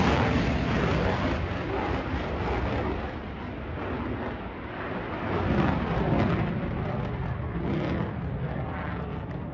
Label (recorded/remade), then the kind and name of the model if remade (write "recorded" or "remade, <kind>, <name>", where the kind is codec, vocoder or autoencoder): recorded